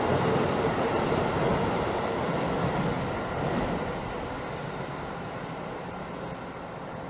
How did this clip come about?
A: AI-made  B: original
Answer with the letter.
B